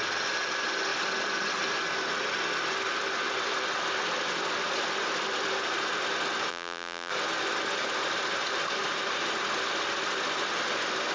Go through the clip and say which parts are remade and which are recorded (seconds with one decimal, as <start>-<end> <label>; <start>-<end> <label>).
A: 0.0-6.5 recorded; 6.5-7.1 remade; 7.1-11.1 recorded